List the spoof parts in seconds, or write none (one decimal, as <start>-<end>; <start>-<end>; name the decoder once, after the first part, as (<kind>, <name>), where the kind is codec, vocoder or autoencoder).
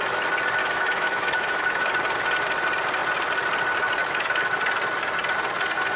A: 0.6-1.9 (autoencoder, DAC-VAE); 4.0-4.6